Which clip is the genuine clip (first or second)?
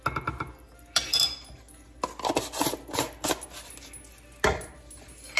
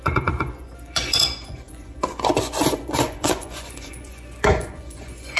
first